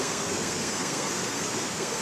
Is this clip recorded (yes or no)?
no